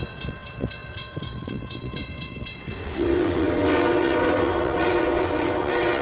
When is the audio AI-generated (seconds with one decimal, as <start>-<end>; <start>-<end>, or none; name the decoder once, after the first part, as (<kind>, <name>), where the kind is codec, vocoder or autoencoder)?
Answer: 0.0-6.0 (vocoder, WaveNeXt)